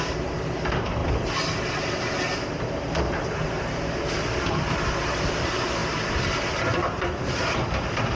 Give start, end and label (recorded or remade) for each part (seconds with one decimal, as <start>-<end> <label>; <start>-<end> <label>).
0.0-1.0 remade; 1.0-1.7 recorded; 1.7-8.2 remade